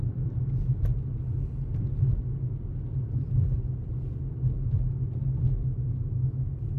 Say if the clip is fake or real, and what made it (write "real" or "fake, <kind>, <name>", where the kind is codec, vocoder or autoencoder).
real